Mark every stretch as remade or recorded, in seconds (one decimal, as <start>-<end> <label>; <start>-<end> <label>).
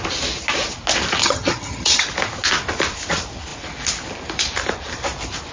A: 0.0-1.2 recorded; 1.2-2.0 remade; 2.0-5.5 recorded